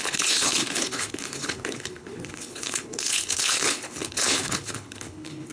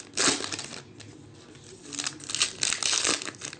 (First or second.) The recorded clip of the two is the second